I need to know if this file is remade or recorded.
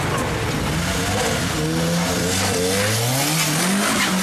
recorded